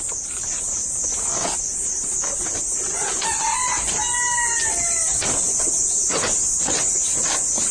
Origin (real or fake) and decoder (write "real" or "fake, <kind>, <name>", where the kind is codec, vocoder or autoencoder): real